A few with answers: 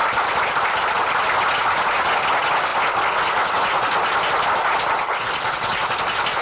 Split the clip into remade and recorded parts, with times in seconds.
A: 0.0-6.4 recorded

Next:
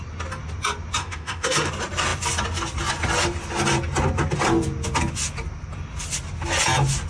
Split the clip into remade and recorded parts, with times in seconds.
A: 0.0-1.0 recorded; 1.0-1.7 remade; 1.7-7.1 recorded

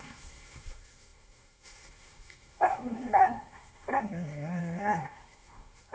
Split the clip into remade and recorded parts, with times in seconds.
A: 0.0-5.9 remade

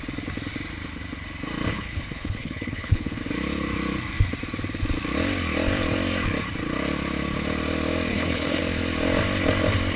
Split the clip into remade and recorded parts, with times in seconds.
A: 0.0-1.7 recorded; 1.7-3.2 remade; 3.2-8.1 recorded; 8.1-8.6 remade; 8.6-10.0 recorded

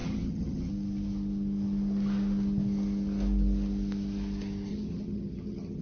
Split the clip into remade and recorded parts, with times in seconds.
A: 0.0-0.7 remade; 0.7-4.7 recorded; 4.7-5.8 remade